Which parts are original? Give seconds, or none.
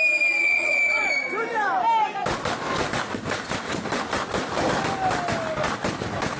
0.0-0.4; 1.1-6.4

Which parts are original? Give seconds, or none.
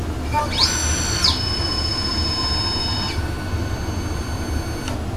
0.0-2.8; 4.5-5.2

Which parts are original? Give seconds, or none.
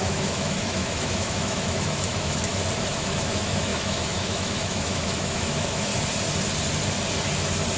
2.5-3.0; 5.9-7.8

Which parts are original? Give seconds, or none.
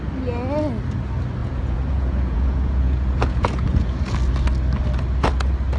0.0-1.4; 4.0-5.8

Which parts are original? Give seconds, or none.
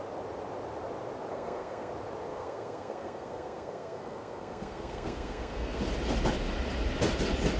0.0-1.3; 1.9-2.3; 5.8-7.6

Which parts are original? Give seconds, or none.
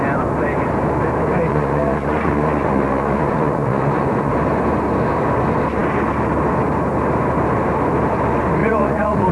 0.0-1.5; 4.3-8.6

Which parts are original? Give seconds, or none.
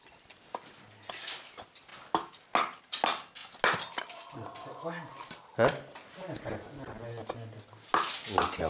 0.0-8.7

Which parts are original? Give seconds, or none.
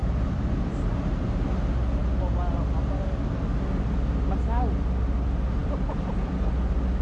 0.6-5.6; 6.3-7.0